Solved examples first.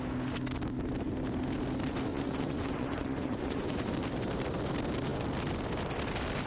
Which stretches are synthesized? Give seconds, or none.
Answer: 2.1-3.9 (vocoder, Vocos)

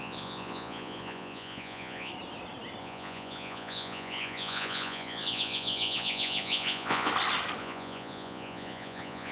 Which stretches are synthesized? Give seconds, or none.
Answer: 0.0-2.1 (vocoder, Vocos); 2.8-7.1; 7.6-9.3

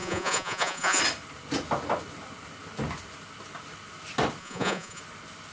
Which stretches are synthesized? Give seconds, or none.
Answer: 0.0-1.0 (vocoder, Vocos); 4.4-5.0

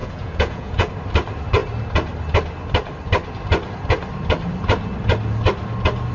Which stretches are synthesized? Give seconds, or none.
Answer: 0.0-0.9 (vocoder, Vocos)

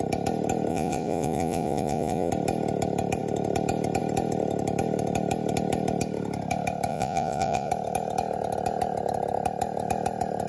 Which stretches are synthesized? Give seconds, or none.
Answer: 0.7-2.3 (vocoder, Vocos); 6.9-7.7

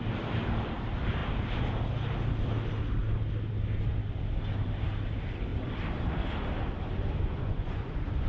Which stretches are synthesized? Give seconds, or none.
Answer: 7.3-8.3 (vocoder, Vocos)

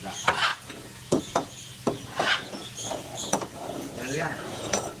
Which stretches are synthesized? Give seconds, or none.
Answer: 0.0-5.0 (vocoder, Vocos)